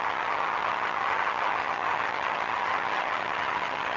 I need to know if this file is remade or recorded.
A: remade